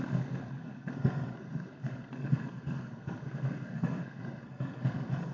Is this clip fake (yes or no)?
yes